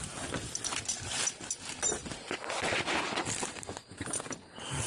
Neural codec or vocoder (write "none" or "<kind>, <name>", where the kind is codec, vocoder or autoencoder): none